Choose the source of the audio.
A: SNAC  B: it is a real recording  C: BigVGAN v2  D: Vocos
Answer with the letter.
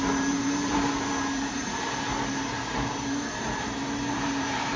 C